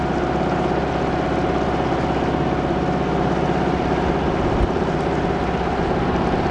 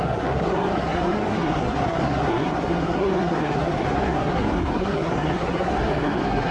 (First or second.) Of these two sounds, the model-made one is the second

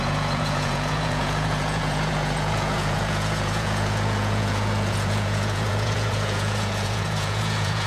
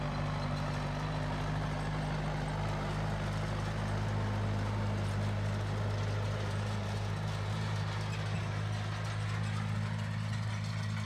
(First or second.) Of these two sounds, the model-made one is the first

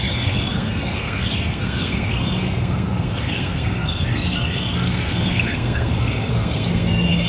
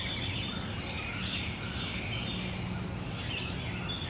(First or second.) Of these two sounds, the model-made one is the first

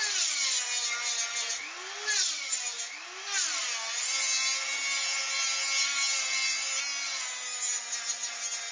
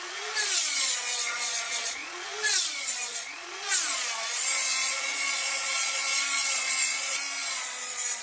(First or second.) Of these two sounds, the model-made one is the second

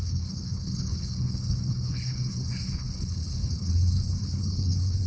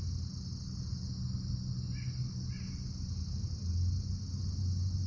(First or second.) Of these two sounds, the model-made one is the first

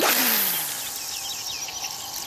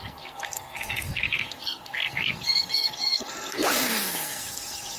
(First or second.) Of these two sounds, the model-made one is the second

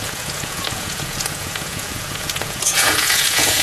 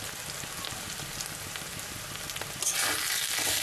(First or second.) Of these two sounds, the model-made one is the first